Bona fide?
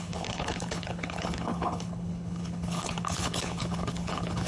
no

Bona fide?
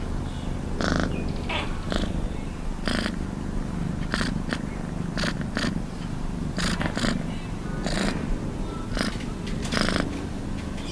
yes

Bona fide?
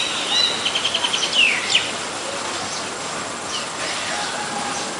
yes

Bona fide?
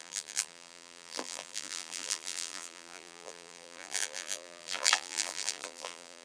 no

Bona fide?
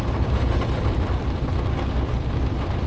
yes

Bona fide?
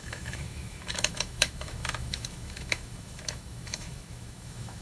no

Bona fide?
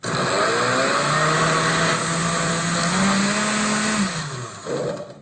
yes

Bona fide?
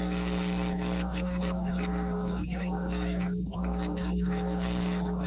no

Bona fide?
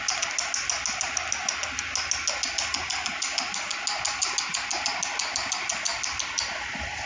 yes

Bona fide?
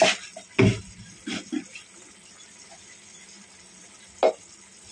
yes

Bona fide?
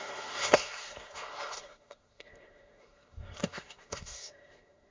no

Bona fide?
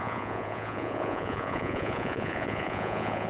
no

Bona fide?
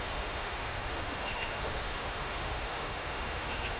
no